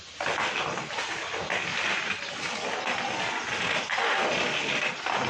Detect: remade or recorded recorded